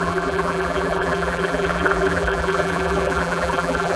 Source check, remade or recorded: remade